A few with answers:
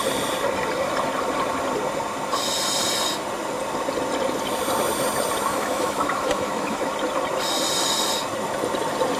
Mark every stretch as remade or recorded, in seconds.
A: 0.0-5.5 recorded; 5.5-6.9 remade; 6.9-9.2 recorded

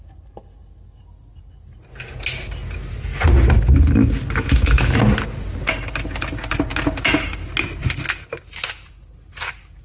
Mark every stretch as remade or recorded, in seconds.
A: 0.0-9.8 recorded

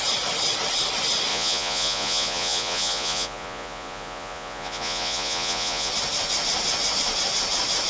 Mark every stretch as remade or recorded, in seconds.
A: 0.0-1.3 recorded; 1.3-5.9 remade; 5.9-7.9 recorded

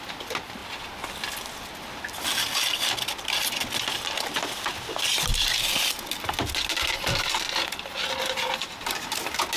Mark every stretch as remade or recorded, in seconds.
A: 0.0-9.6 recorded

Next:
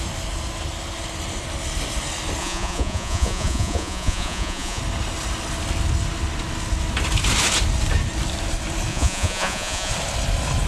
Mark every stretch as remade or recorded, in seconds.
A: 0.0-2.4 recorded; 2.4-4.8 remade; 4.8-8.9 recorded; 8.9-9.9 remade; 9.9-10.7 recorded

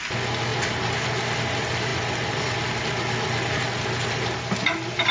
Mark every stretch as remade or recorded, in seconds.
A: 0.0-5.1 recorded

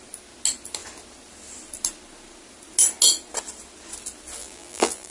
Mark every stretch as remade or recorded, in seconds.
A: 0.0-4.4 recorded; 4.4-5.1 remade

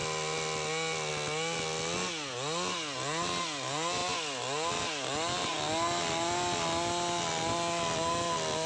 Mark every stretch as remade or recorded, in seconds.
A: 0.0-8.7 recorded